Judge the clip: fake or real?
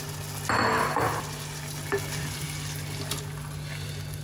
real